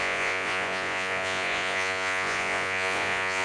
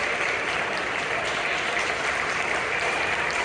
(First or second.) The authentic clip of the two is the second